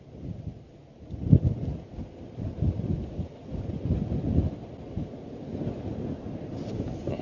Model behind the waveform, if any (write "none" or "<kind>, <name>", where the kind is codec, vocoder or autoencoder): none